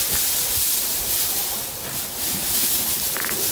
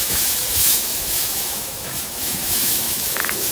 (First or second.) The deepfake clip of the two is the second